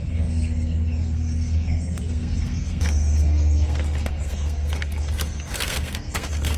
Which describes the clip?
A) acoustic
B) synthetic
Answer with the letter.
B